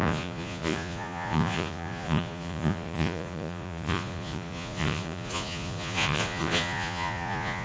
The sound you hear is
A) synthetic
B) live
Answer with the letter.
A